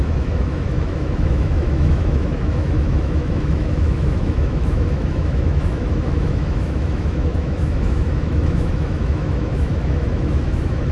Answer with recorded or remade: remade